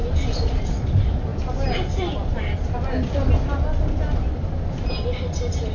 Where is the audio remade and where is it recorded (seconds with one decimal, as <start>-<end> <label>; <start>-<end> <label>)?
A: 0.0-5.7 recorded